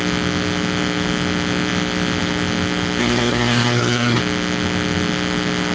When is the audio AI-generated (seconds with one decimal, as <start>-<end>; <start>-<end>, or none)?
3.0-4.2